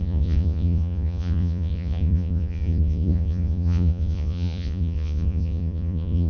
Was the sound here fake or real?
fake